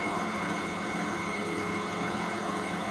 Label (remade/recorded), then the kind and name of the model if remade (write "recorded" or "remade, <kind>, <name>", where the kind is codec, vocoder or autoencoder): remade, codec, HILCodec